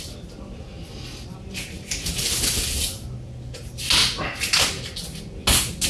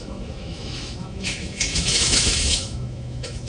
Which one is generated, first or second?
second